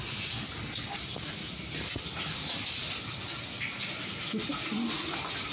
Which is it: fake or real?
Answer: real